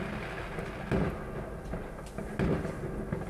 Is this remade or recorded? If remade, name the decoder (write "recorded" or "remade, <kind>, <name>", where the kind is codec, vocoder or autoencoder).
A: recorded